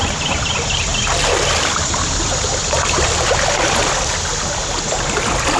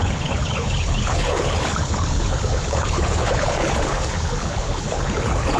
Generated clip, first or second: second